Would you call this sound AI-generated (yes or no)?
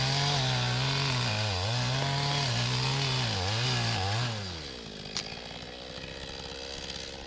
no